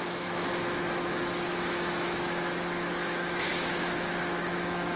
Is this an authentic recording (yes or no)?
no